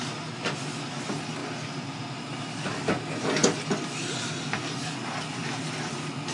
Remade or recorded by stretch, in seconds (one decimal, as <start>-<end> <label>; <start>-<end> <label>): 0.0-6.3 recorded